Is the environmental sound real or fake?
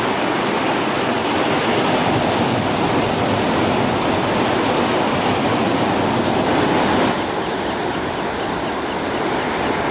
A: real